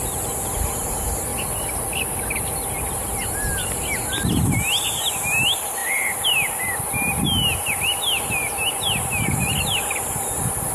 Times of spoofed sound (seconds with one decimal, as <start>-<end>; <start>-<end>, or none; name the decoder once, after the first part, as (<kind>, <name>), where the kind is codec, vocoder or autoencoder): 1.3-2.2 (vocoder, BigVGAN v2); 5.8-6.7